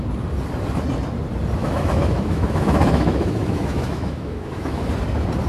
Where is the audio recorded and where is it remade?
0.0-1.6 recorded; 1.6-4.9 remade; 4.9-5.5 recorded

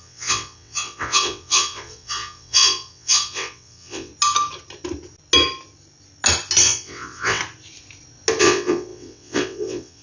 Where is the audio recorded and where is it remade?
0.0-4.1 remade; 4.1-6.6 recorded; 6.6-7.4 remade; 7.4-8.4 recorded; 8.4-10.0 remade

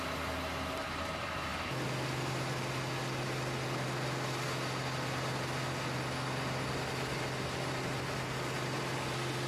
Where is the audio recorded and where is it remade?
0.0-9.5 recorded